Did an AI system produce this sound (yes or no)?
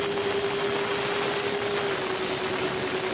no